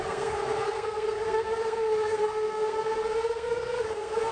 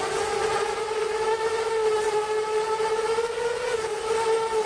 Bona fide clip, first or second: second